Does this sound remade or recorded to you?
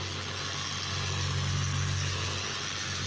recorded